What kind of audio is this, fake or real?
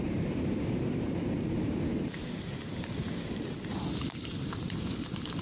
fake